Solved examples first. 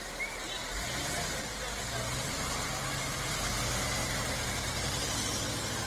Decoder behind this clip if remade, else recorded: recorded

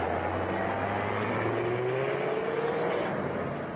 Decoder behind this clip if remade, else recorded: recorded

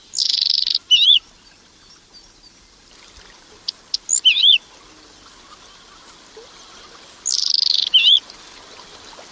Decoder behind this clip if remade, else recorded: recorded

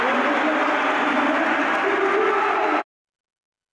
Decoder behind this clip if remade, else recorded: recorded